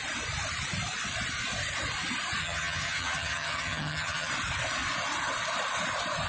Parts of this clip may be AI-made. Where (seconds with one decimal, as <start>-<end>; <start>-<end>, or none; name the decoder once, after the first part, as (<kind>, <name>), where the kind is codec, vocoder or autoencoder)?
2.4-4.3 (vocoder, HiFi-GAN)